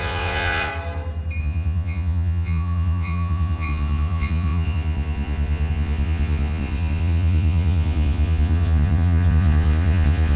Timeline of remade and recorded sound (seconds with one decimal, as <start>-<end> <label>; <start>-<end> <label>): 0.0-0.7 remade; 0.7-1.4 recorded; 1.4-10.4 remade